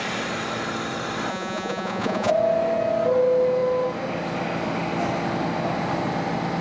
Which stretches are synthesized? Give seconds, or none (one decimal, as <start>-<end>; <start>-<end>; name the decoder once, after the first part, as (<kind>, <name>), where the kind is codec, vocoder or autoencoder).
1.3-2.3 (vocoder, Vocos)